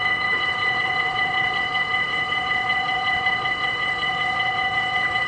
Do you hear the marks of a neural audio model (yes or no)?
yes